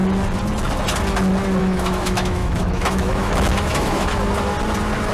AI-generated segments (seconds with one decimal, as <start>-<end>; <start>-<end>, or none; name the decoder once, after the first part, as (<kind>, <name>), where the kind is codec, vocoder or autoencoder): 1.6-4.1 (autoencoder, DAC-VAE)